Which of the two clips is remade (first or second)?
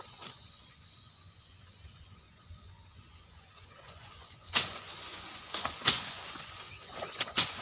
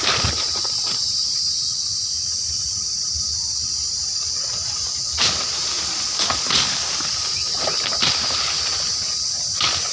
first